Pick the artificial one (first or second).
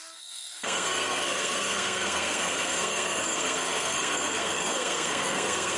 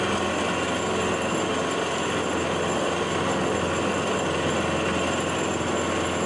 first